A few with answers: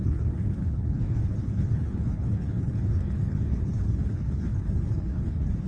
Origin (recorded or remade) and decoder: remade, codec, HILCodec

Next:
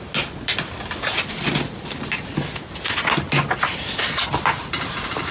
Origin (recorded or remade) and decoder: recorded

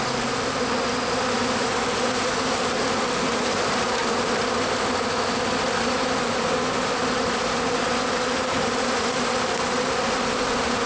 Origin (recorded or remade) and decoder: recorded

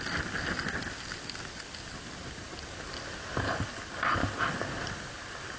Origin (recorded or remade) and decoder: recorded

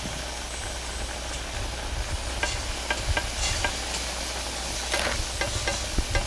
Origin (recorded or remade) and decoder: recorded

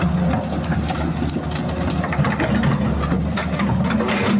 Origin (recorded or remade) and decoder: recorded